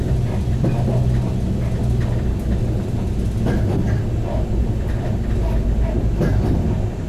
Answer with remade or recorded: recorded